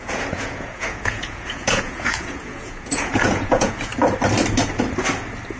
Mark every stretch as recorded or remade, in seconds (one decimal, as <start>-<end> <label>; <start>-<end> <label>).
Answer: 0.0-3.9 remade; 3.9-5.6 recorded